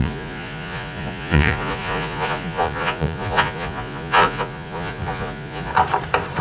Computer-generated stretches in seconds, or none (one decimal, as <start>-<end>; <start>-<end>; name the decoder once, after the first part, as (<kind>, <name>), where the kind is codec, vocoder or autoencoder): 0.0-5.7 (vocoder, Vocos)